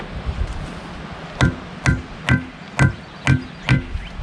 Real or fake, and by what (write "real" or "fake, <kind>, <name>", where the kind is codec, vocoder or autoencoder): real